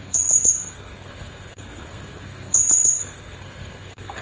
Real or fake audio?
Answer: fake